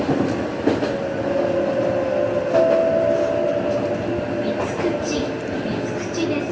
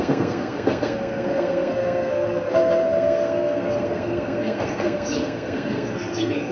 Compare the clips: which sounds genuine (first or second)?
first